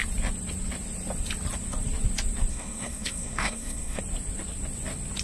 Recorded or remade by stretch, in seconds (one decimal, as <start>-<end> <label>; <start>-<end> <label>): 0.0-2.5 recorded; 2.5-4.0 remade; 4.0-5.2 recorded